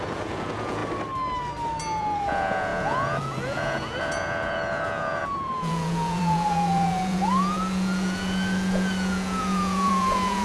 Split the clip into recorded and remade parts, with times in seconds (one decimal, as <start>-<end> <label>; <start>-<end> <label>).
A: 0.0-0.8 remade; 0.8-2.0 recorded; 2.0-10.4 remade